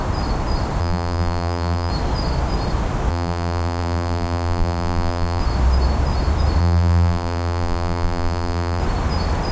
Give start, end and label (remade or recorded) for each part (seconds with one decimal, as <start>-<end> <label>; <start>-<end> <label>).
0.0-0.8 recorded; 0.8-1.9 remade; 1.9-3.1 recorded; 3.1-5.4 remade; 5.4-6.6 recorded; 6.6-8.8 remade; 8.8-9.5 recorded